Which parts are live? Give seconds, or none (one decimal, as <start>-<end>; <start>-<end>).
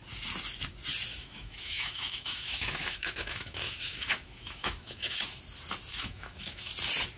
0.0-1.1; 5.4-5.9; 6.7-7.2